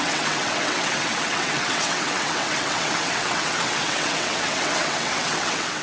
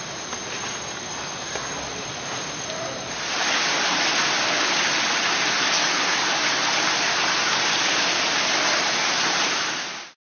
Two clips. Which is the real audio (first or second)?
second